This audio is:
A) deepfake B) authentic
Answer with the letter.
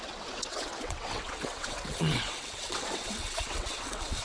A